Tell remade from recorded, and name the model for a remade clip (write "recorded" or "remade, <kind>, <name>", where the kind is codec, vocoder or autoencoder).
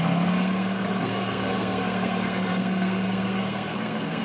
remade, codec, SNAC